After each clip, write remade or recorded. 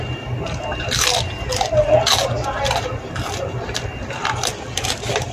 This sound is recorded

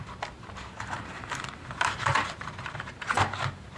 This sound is remade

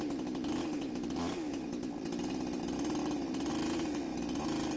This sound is recorded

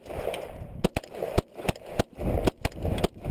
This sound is recorded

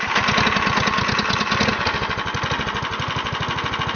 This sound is recorded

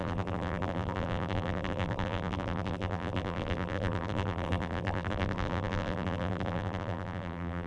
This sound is remade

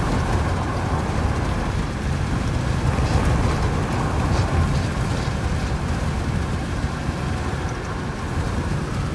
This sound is recorded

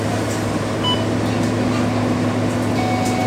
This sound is recorded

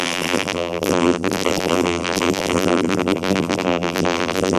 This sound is remade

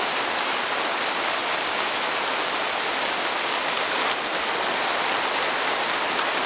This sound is recorded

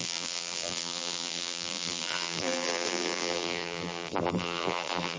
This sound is remade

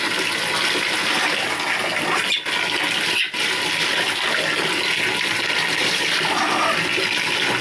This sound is recorded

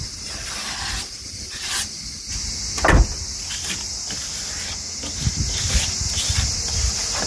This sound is recorded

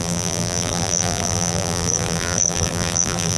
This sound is remade